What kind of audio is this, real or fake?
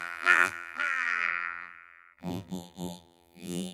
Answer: fake